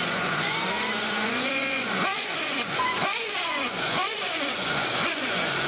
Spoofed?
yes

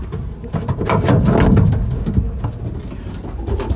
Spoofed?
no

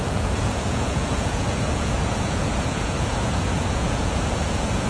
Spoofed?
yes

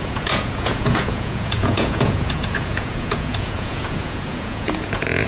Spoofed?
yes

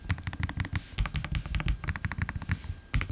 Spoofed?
no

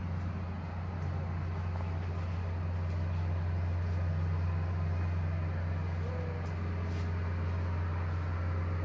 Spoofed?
no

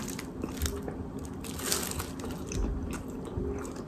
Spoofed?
no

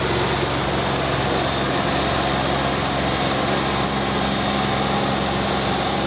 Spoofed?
no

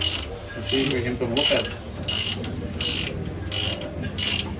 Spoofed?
no